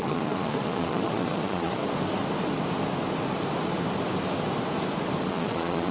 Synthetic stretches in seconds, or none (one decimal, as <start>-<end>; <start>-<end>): 0.0-1.8; 5.3-5.9